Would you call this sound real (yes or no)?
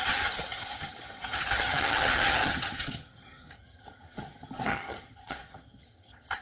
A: no